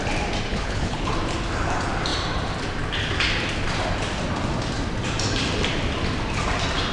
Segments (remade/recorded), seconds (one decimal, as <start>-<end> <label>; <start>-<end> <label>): 0.0-0.5 recorded; 0.5-1.1 remade; 1.1-6.9 recorded